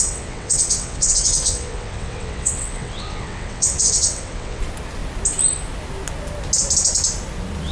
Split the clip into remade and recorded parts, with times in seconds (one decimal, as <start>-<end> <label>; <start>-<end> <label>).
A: 0.0-4.6 remade; 4.6-7.7 recorded